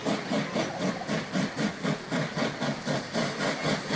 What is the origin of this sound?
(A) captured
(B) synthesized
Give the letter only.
A